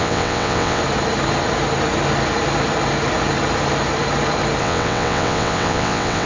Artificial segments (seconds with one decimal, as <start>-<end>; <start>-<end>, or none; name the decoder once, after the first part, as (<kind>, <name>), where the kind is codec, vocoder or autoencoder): 0.0-0.8 (vocoder, WaveNeXt); 4.6-6.3